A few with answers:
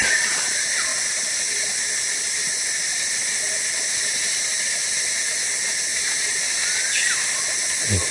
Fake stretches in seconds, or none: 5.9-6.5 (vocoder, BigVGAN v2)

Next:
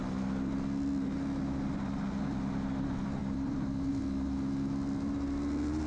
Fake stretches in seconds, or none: 3.2-3.9 (vocoder, BigVGAN v2)

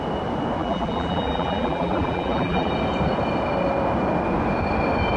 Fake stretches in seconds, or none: 0.6-2.7 (vocoder, BigVGAN v2)

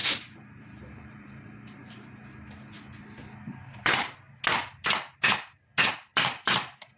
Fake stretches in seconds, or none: 0.0-2.5 (vocoder, BigVGAN v2); 3.7-4.4